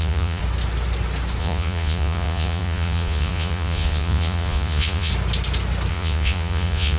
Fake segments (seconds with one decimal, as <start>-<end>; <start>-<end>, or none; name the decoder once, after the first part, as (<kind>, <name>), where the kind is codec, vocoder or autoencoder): 0.0-0.4 (vocoder, Vocos); 1.4-5.1; 5.9-7.0